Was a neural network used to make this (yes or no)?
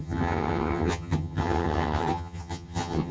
yes